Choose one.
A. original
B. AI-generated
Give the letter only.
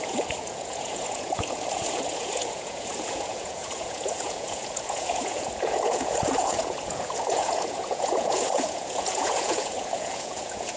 B